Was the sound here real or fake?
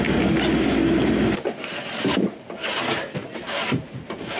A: real